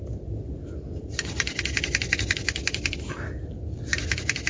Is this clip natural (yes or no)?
yes